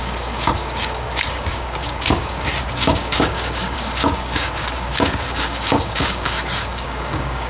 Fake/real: fake